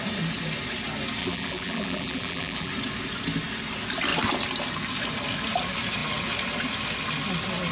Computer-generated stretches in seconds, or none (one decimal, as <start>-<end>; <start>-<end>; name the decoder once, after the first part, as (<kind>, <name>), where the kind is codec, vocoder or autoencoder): 1.2-2.7 (vocoder, BigVGAN v2)